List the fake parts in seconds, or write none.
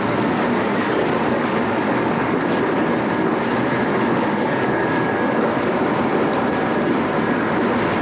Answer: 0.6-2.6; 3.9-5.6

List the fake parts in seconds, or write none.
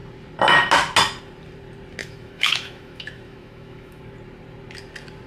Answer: 2.0-4.0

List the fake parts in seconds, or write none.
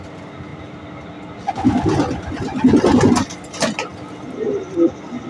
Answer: none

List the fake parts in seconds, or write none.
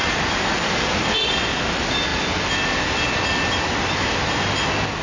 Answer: 0.0-0.9; 2.1-2.9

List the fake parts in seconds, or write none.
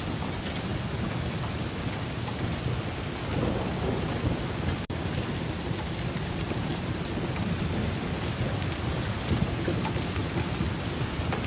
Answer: 0.0-6.7; 8.9-11.5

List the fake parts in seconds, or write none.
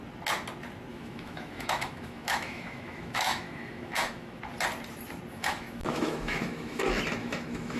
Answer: 0.9-4.4; 5.3-6.8; 7.2-7.8